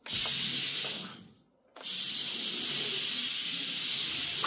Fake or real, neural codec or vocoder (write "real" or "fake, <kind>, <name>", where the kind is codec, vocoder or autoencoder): real